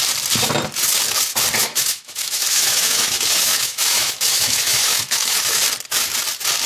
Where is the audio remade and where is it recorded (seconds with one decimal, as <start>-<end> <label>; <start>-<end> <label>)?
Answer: 0.0-1.6 recorded; 1.6-5.6 remade; 5.6-6.7 recorded